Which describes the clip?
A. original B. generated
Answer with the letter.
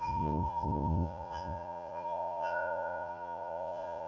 B